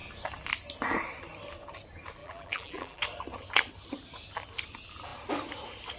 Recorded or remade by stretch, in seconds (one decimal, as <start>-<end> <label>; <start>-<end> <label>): 0.0-2.2 recorded; 2.2-3.0 remade; 3.0-6.0 recorded